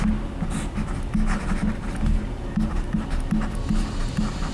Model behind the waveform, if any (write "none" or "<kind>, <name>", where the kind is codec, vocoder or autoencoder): none